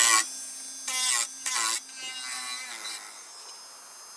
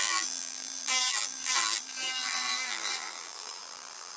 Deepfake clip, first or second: second